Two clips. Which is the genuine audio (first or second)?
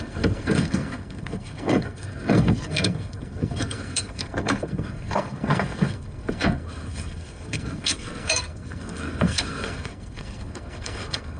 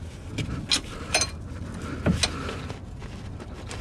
second